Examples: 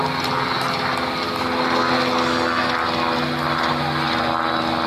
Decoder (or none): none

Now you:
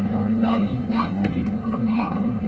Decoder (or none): codec, SNAC